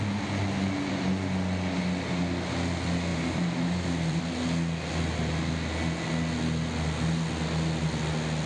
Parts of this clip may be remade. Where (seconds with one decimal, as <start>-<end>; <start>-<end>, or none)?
3.1-4.2